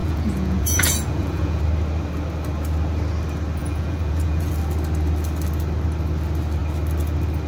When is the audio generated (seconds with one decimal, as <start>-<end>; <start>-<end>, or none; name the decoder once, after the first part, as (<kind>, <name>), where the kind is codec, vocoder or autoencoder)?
0.0-1.6 (vocoder, Vocos); 3.6-4.5